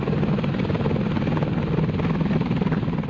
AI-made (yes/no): no